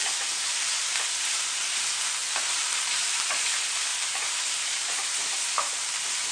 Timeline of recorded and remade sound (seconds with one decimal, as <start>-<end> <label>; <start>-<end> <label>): 0.0-1.1 remade; 1.1-2.2 recorded; 2.2-3.3 remade; 3.3-3.9 recorded; 3.9-6.3 remade